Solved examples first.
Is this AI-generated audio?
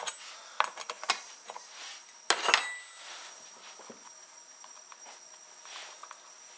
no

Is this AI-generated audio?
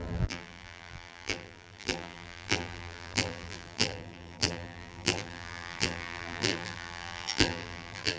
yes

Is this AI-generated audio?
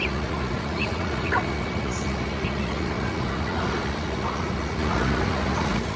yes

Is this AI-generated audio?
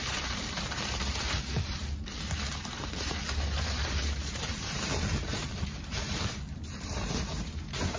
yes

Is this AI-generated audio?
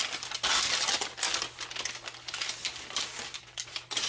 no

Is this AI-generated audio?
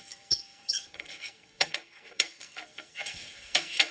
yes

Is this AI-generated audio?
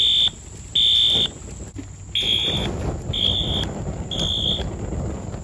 no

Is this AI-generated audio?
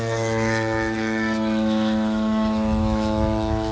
yes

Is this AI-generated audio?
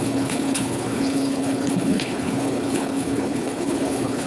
yes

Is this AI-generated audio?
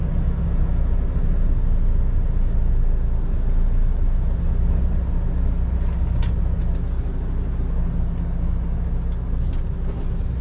no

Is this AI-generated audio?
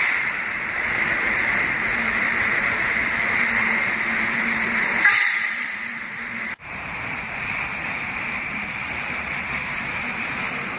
yes